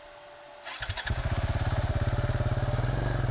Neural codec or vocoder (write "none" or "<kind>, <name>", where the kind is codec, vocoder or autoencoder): none